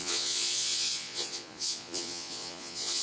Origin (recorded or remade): remade